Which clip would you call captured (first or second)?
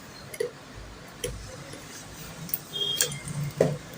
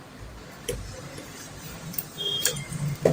first